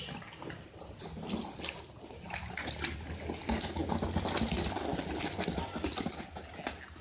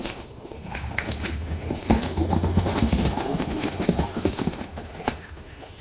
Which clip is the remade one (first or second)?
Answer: second